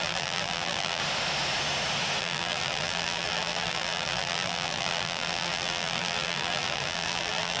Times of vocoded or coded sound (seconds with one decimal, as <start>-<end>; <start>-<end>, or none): 0.0-1.0; 2.2-7.6

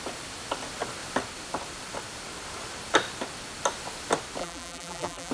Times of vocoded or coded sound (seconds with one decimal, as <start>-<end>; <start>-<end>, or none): 4.4-5.3

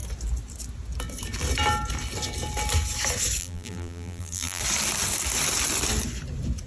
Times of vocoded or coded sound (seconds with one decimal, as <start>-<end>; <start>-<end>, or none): 3.4-4.6

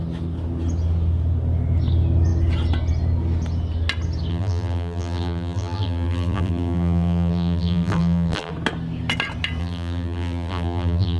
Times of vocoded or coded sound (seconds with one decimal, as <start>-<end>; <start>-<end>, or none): 4.3-8.5; 9.6-11.2

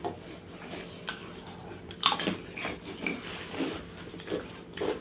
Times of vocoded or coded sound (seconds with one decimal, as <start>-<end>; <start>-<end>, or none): none

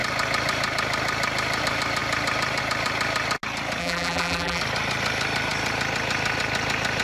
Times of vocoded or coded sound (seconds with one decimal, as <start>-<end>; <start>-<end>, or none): 3.8-4.6

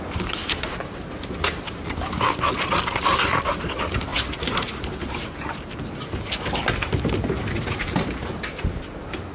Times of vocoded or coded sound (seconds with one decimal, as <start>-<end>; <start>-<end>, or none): 0.4-2.3; 4.1-5.7

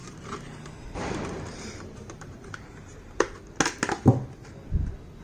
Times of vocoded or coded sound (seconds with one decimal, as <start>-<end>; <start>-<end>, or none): 0.0-3.1